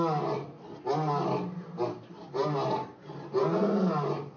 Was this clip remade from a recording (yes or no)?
no